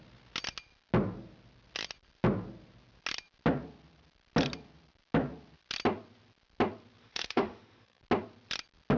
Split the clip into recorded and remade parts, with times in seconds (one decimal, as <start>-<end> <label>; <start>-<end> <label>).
0.0-7.0 recorded; 7.0-8.0 remade; 8.0-9.0 recorded